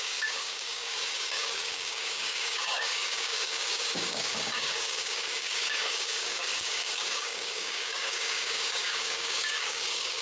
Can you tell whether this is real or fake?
fake